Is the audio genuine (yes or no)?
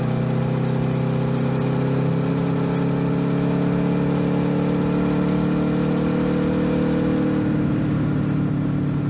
yes